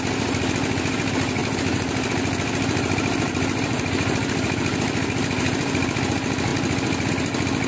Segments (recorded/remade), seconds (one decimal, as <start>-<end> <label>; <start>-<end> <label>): 0.0-1.4 recorded; 1.4-6.0 remade; 6.0-7.7 recorded